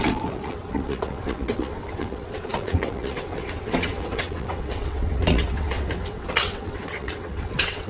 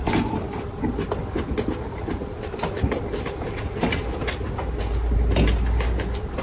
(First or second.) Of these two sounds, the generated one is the first